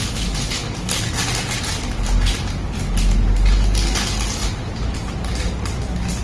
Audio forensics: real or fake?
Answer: real